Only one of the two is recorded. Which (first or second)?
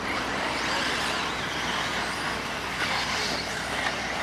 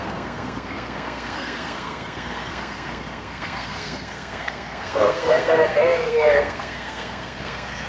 first